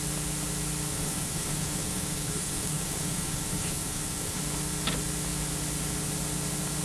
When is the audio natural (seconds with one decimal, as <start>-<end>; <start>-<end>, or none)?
0.0-0.9; 4.4-6.8